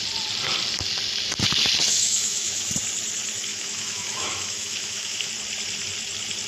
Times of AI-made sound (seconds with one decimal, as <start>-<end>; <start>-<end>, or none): 1.9-2.7; 3.5-5.3